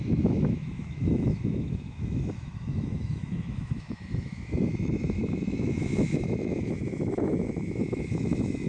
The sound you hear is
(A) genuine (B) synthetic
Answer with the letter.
B